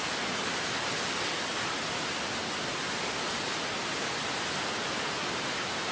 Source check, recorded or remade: recorded